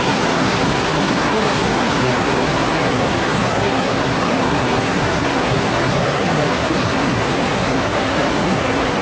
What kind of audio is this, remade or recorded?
remade